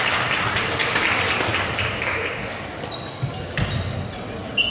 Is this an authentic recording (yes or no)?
yes